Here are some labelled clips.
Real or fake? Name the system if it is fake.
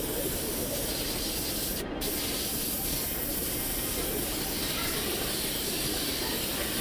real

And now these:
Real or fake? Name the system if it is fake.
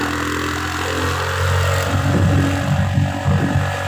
real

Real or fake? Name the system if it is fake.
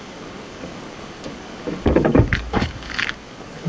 fake, codec, DAC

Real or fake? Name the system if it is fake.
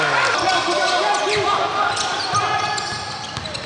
real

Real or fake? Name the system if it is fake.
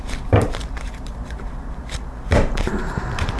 fake, vocoder, BigVGAN v2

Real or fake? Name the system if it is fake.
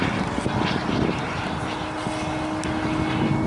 real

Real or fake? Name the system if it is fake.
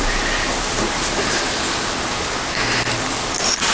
real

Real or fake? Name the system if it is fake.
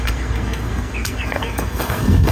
fake, codec, SNAC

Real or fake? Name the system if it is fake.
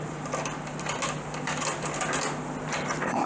real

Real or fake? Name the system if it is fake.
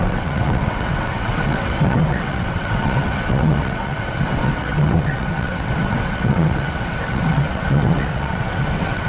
fake, vocoder, WaveNeXt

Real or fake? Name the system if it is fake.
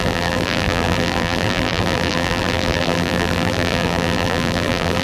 fake, vocoder, BigVGAN v2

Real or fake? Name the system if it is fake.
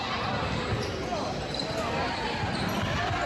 real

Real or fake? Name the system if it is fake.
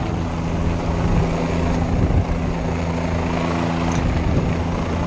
real